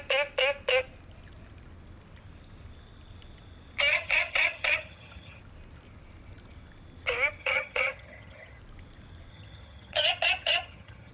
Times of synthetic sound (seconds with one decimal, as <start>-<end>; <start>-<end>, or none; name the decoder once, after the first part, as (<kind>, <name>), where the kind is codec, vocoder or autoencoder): 3.9-5.4 (vocoder, HiFi-GAN); 7.4-8.6; 9.3-11.1